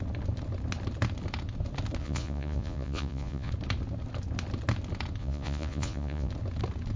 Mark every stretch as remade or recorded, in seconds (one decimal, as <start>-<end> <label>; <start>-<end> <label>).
0.0-2.0 recorded; 2.0-3.5 remade; 3.5-5.2 recorded; 5.2-6.3 remade; 6.3-7.0 recorded